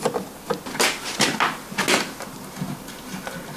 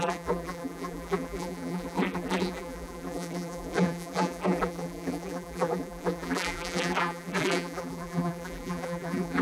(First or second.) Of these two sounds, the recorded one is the first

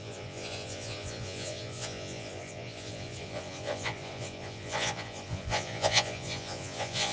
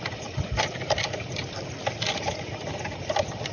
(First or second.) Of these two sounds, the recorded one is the second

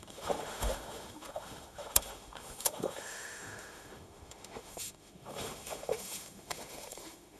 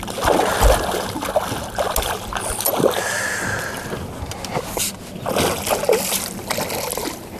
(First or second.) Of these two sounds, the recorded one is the second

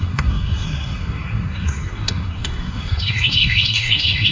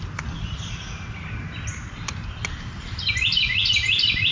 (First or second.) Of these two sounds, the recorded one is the second